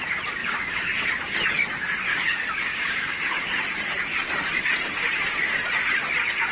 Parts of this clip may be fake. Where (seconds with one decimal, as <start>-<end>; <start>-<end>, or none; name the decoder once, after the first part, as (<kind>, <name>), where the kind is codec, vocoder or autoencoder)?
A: 0.4-1.1 (codec, DAC); 2.1-3.5